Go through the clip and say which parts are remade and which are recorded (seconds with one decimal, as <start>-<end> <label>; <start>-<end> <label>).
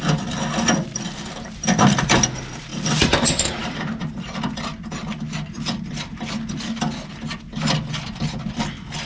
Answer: 0.0-9.1 recorded